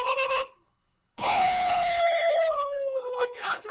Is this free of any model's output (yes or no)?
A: no